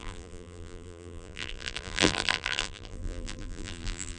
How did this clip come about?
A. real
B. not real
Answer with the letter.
B